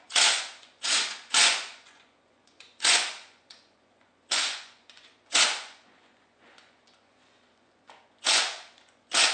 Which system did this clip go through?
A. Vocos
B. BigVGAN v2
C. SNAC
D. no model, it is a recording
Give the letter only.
A